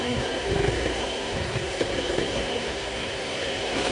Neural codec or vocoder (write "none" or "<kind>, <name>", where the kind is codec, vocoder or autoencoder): codec, SNAC